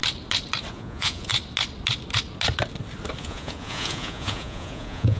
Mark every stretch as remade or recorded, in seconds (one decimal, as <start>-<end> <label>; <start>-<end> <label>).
0.0-0.7 recorded; 0.7-1.3 remade; 1.3-3.2 recorded; 3.2-5.2 remade